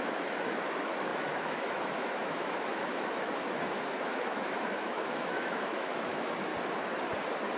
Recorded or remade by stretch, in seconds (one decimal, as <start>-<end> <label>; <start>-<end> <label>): 0.0-6.5 remade; 6.5-7.6 recorded